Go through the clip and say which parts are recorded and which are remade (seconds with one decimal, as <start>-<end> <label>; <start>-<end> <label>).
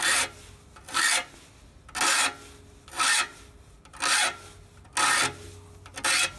0.0-6.4 recorded